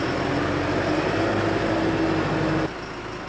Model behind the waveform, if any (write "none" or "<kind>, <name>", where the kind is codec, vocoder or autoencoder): none